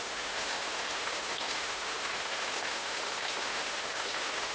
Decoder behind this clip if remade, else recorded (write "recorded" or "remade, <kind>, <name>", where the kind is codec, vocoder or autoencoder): remade, autoencoder, DAC-VAE